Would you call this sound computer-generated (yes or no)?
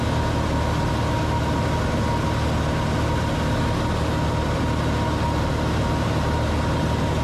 no